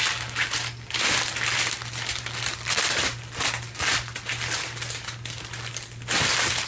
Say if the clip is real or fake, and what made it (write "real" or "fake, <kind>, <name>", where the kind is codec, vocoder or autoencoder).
real